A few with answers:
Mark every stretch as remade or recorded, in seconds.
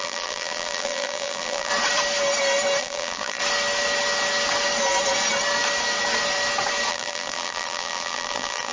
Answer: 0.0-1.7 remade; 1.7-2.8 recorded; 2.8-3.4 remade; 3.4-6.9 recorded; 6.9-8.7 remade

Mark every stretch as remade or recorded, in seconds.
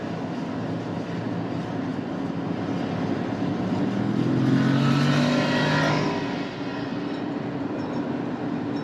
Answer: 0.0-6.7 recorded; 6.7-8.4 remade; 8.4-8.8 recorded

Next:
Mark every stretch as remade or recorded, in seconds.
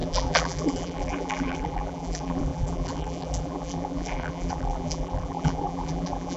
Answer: 0.0-6.4 remade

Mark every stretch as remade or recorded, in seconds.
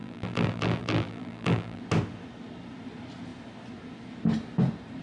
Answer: 0.0-1.8 remade; 1.8-5.0 recorded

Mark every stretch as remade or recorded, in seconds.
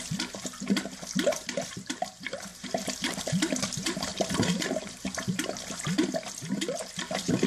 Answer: 0.0-2.5 recorded; 2.5-3.2 remade; 3.2-4.1 recorded; 4.1-4.7 remade; 4.7-7.5 recorded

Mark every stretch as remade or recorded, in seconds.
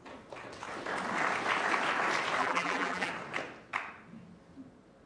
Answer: 0.0-2.4 recorded; 2.4-3.1 remade; 3.1-5.1 recorded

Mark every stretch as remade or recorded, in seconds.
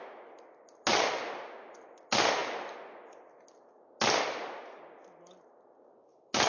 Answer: 0.0-6.5 recorded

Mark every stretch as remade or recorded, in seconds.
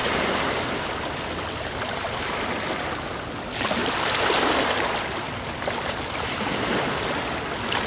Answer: 0.0-2.9 remade; 2.9-3.8 recorded; 3.8-6.4 remade; 6.4-7.9 recorded